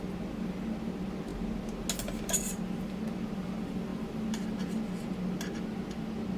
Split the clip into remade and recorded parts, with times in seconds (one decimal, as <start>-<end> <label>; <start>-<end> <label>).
0.0-6.4 recorded